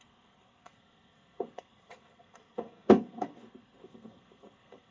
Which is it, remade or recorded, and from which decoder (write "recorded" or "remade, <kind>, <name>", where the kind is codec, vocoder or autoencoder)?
remade, codec, SNAC